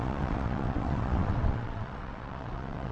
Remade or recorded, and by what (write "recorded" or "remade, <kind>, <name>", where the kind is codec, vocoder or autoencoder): remade, vocoder, WaveNeXt